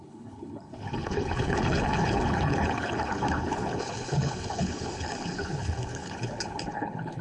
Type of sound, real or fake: fake